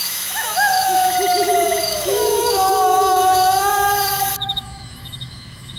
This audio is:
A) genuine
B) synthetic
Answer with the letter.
B